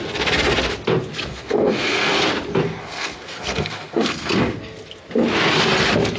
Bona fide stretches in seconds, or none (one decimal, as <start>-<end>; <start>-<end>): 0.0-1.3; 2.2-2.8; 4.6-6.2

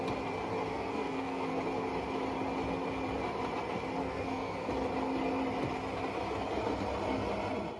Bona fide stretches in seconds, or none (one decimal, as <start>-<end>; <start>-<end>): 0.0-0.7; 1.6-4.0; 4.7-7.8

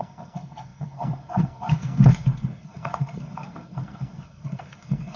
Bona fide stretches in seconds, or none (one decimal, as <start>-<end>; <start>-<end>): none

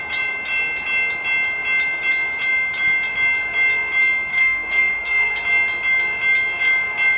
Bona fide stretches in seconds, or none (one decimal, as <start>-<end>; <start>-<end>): 0.0-4.3; 5.3-7.2